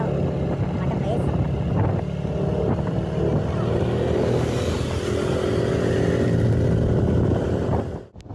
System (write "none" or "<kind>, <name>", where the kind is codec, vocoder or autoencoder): none